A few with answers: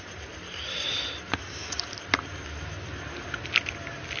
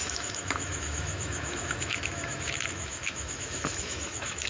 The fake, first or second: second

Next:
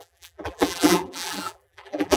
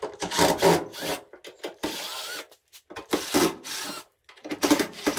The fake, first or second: first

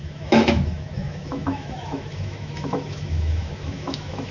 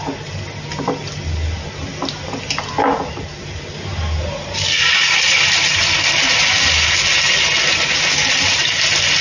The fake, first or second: first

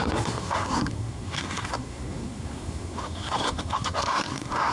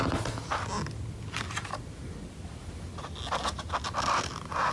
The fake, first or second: first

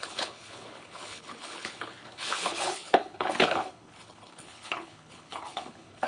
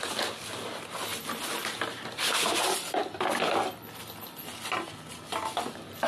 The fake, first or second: first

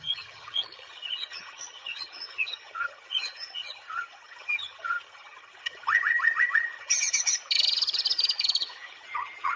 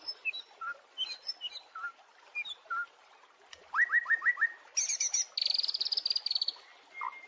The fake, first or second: first